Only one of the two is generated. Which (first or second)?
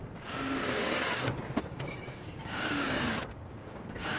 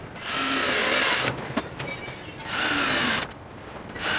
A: first